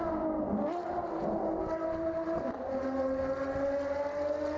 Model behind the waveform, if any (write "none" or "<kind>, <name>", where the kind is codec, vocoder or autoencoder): none